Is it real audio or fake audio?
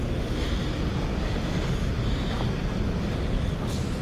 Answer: real